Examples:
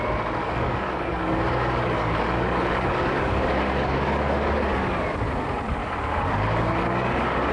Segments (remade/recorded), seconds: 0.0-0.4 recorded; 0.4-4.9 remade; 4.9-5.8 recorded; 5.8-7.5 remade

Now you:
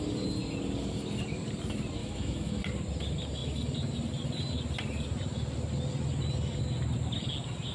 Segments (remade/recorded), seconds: 0.0-2.0 recorded; 2.0-2.6 remade; 2.6-7.7 recorded